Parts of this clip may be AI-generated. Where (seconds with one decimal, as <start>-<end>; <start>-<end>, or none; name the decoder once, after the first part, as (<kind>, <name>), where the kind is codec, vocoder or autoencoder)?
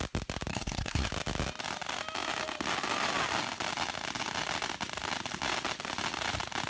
0.5-1.1 (codec, SNAC)